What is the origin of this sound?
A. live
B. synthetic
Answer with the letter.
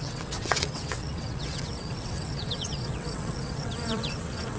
B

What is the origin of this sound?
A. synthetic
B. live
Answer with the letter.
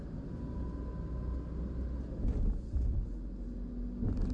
B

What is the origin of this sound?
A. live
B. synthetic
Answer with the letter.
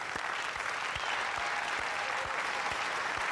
A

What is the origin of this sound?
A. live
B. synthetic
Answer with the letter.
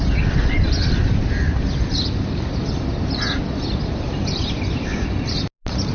A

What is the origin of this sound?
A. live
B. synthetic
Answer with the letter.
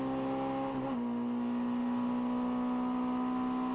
A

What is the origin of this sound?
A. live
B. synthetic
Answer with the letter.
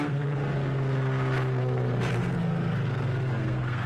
B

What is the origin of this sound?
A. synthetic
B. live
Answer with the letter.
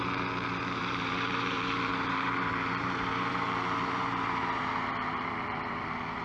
A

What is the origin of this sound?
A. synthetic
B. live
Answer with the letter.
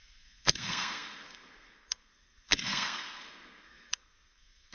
A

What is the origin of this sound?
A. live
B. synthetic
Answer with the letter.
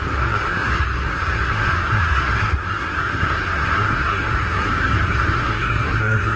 B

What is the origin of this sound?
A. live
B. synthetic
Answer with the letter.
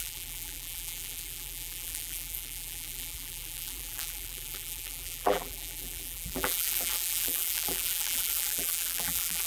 B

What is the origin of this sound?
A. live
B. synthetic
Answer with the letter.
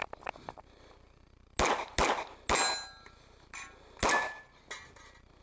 A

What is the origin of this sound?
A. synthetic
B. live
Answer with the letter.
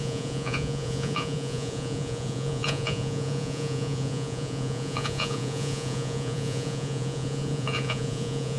A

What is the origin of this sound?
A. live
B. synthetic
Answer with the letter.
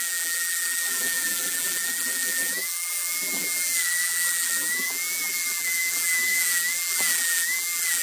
B